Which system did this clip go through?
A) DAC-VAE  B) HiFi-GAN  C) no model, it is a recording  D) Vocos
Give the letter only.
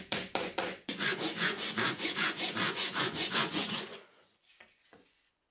D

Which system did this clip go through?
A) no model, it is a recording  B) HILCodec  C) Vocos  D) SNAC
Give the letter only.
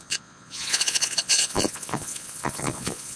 C